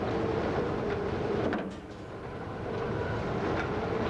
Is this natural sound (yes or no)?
yes